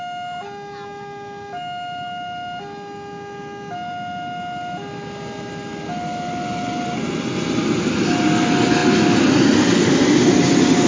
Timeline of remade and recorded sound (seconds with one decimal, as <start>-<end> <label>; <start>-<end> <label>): 0.0-10.9 recorded